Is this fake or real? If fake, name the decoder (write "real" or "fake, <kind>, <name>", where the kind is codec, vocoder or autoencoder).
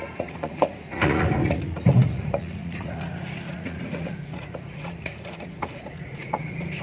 fake, vocoder, Vocos